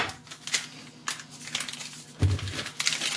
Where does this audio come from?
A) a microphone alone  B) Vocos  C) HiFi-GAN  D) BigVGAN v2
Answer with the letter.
A